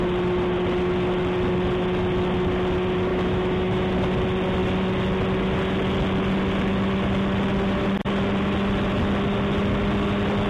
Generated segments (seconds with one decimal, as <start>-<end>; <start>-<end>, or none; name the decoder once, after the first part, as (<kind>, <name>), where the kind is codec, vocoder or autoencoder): 3.1-3.9 (autoencoder, DAC-VAE)